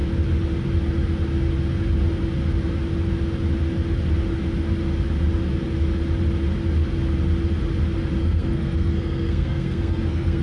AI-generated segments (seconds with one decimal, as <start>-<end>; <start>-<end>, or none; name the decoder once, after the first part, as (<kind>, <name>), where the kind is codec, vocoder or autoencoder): 8.2-10.4 (codec, SNAC)